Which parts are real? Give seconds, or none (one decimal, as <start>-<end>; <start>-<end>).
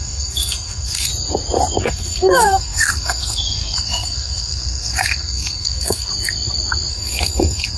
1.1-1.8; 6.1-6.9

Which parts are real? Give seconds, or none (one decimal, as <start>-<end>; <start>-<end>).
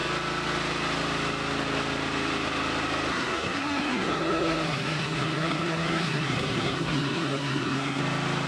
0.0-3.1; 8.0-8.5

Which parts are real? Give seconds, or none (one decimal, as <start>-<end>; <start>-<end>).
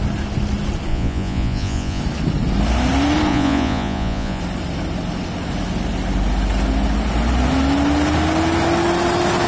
0.0-0.9; 2.0-3.3; 4.4-9.5